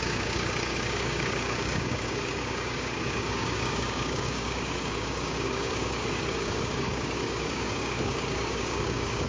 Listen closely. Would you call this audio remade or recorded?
remade